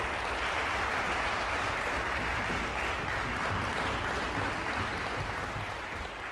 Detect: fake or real real